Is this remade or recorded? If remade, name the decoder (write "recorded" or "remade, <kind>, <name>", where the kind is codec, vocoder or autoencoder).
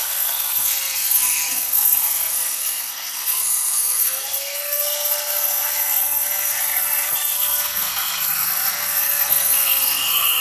remade, codec, SNAC